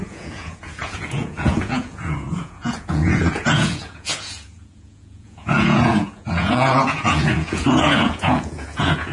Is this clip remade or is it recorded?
remade